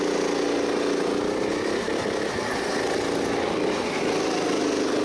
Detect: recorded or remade recorded